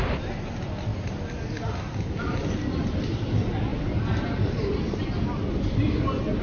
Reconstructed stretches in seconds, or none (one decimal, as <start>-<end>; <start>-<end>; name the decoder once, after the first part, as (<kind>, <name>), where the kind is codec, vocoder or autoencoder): none